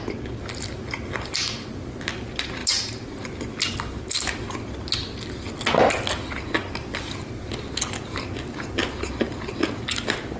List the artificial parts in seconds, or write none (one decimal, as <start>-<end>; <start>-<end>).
none

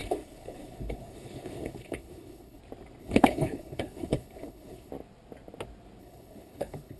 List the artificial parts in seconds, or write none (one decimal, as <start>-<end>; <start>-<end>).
0.0-2.6; 3.0-4.9; 6.0-7.0

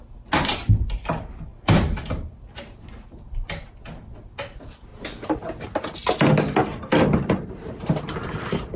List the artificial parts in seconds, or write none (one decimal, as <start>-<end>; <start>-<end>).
none

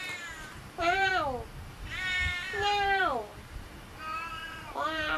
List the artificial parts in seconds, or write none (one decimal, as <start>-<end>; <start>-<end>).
0.0-1.1; 1.7-5.2

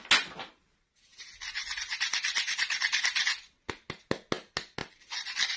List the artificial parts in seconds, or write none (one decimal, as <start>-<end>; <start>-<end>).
none

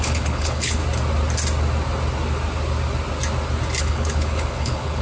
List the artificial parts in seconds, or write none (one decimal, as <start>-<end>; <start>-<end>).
0.0-0.8; 3.8-5.0

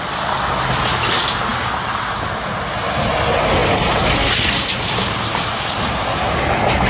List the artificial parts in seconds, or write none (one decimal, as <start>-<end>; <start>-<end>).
none

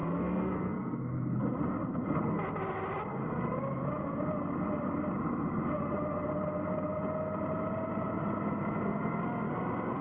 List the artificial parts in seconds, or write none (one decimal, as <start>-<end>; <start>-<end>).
0.0-1.4